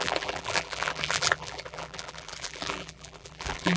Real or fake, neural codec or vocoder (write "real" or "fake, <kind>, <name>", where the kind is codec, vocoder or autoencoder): fake, vocoder, BigVGAN v2